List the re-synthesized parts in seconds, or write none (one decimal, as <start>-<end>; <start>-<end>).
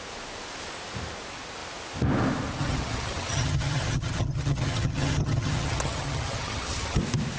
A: 2.6-7.0